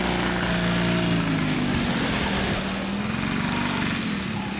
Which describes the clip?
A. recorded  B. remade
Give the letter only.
A